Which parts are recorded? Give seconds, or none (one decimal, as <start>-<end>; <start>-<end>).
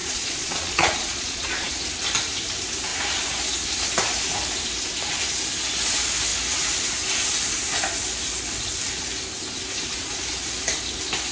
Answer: 1.7-11.3